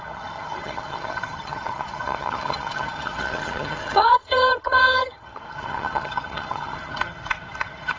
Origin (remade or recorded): remade